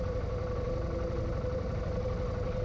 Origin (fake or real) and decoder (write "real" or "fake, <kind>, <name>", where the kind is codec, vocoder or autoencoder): real